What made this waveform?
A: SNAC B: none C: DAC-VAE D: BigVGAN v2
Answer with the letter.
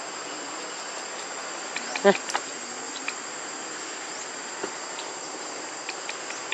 B